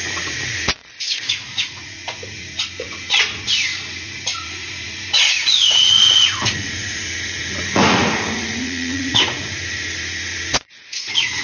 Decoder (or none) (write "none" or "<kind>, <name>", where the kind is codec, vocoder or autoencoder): vocoder, Vocos